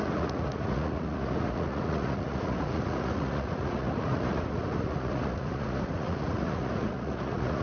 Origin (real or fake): fake